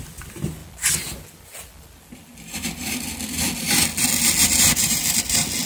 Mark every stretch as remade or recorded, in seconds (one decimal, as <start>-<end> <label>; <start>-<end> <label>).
0.0-0.6 recorded; 0.6-2.6 remade; 2.6-4.4 recorded; 4.4-5.2 remade; 5.2-5.7 recorded